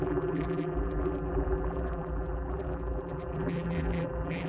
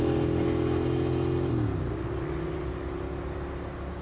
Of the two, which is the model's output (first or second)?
first